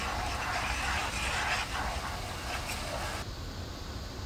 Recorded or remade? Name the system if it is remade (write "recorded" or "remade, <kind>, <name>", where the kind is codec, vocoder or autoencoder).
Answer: recorded